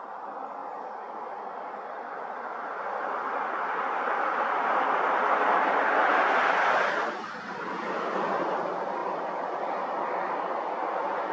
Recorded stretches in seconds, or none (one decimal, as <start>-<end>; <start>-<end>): 0.0-11.3